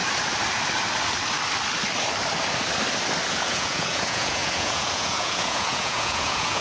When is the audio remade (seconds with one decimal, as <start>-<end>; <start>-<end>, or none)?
3.3-6.6